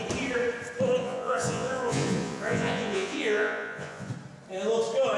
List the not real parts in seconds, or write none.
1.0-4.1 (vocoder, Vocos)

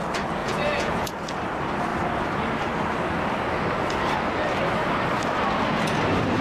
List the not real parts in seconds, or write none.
0.4-1.1 (vocoder, Vocos)

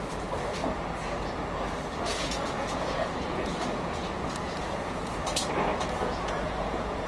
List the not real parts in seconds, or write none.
2.1-5.1 (vocoder, Vocos); 5.7-7.1

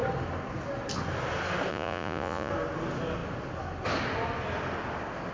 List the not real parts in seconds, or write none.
1.7-2.5 (vocoder, Vocos)

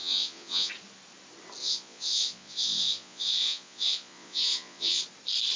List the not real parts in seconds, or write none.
0.0-0.7 (vocoder, Vocos); 1.6-5.0

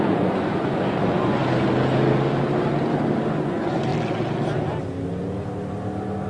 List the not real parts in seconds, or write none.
0.0-1.4 (vocoder, Vocos); 3.3-3.9

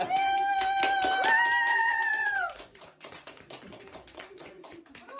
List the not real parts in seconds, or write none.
1.7-4.8 (vocoder, Vocos)

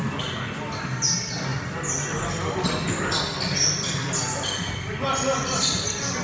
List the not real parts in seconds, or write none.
none